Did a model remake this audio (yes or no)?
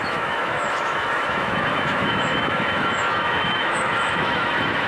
yes